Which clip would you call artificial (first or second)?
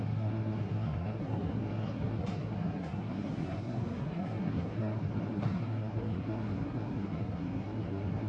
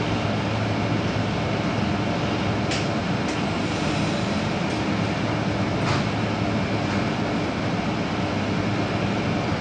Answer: first